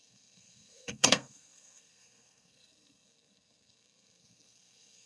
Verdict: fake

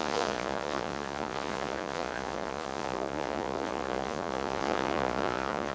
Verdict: fake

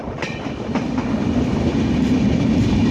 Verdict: real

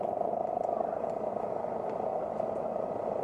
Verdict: fake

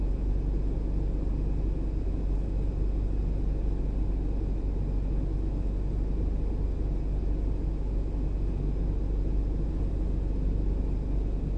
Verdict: real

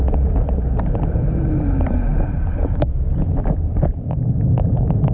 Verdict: fake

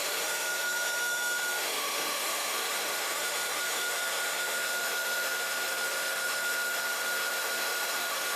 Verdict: fake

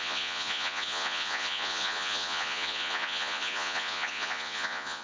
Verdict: fake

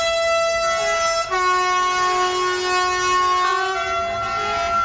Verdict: real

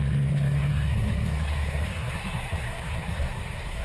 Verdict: fake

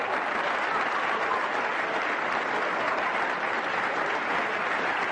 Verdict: real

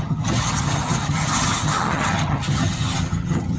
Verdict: fake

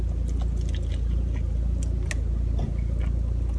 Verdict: real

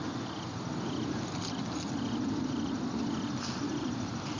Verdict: real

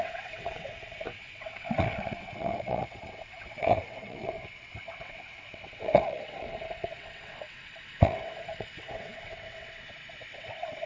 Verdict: fake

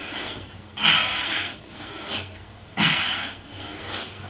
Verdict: fake